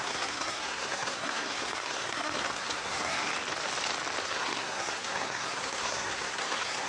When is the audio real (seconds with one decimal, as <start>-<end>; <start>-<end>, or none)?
3.3-4.2